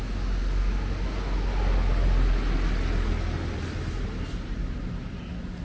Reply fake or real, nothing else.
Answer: real